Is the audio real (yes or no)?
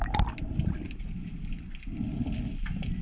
yes